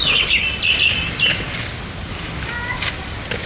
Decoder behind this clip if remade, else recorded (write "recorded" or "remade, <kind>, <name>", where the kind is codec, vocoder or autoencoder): recorded